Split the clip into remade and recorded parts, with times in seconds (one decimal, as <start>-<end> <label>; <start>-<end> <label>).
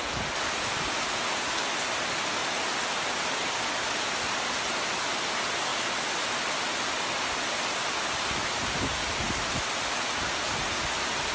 0.0-11.3 recorded